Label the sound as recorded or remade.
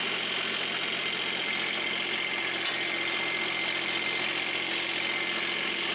recorded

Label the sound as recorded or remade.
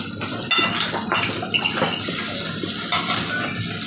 recorded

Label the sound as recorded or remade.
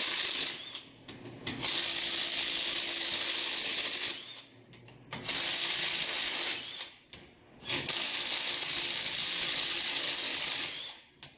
recorded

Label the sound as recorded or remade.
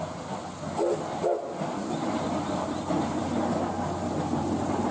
recorded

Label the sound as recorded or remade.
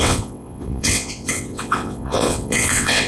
remade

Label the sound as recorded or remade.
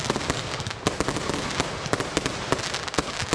recorded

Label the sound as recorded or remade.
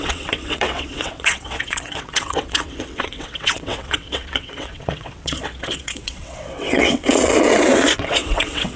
remade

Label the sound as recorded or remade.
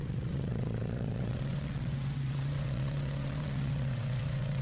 remade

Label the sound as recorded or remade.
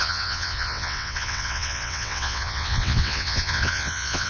remade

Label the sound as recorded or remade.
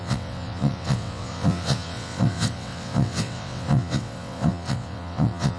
remade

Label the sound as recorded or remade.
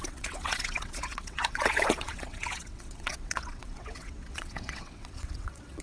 remade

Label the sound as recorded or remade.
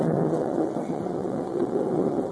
remade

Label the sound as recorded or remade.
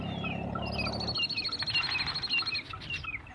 recorded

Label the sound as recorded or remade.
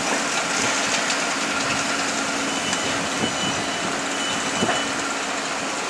recorded